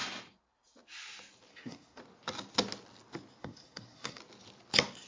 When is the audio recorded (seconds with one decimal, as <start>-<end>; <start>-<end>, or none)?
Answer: 0.0-1.5; 2.0-3.4; 4.2-5.1